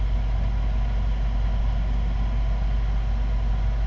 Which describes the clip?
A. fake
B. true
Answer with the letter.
B